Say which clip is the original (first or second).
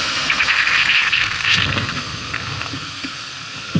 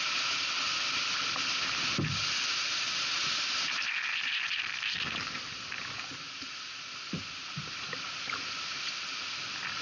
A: second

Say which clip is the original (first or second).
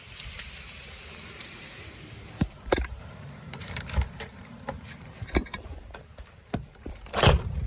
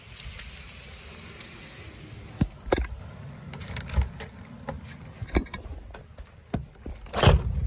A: second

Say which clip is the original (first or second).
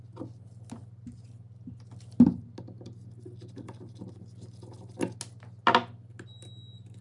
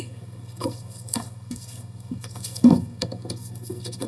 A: first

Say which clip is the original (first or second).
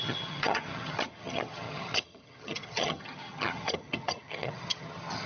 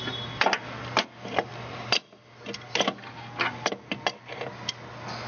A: second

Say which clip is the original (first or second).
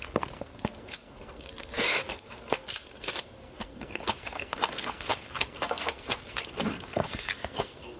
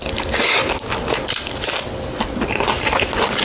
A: second